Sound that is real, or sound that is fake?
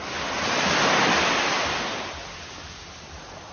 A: real